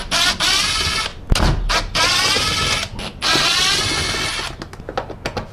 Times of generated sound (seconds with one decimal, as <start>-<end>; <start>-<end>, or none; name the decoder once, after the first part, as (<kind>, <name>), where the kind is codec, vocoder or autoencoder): none